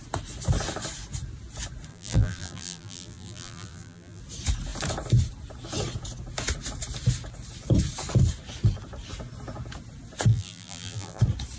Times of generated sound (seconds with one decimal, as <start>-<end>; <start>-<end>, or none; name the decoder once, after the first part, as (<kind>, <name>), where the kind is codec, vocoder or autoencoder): 1.9-4.2 (vocoder, BigVGAN v2); 10.3-11.2